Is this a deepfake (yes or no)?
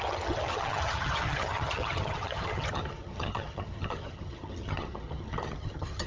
yes